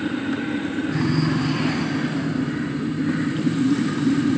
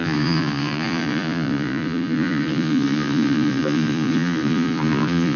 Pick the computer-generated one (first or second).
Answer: second